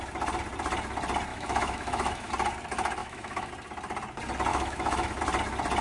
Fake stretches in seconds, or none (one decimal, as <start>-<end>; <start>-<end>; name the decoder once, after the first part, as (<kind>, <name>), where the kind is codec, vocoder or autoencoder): 1.3-2.3 (autoencoder, DAC-VAE); 3.0-3.5; 4.5-5.2